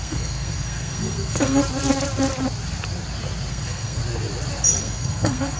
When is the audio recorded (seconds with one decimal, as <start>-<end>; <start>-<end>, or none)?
1.6-3.5; 4.0-4.8